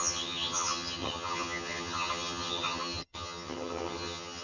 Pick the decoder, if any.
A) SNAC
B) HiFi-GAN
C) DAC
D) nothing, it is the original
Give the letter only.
B